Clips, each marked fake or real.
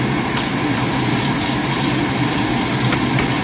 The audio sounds real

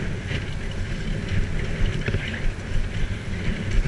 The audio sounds real